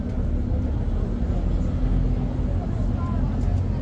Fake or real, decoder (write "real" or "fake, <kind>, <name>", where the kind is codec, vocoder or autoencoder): real